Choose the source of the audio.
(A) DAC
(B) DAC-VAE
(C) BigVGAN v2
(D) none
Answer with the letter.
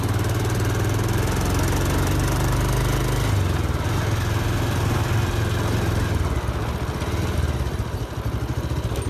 D